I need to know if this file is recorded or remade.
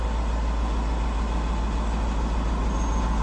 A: recorded